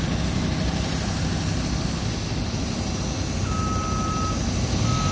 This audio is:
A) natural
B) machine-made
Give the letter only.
A